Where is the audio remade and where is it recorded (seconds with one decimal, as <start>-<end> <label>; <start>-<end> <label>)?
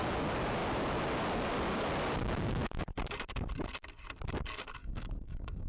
0.0-4.8 recorded; 4.8-5.7 remade